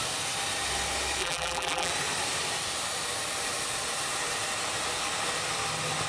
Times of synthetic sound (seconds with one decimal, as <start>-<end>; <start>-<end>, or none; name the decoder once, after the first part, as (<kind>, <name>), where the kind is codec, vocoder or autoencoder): 1.2-1.9 (vocoder, BigVGAN v2)